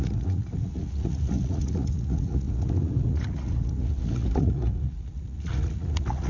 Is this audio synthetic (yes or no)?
yes